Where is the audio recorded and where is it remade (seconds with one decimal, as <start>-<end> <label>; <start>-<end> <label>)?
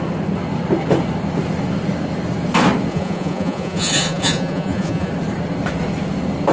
0.0-2.9 recorded; 2.9-5.1 remade; 5.1-6.5 recorded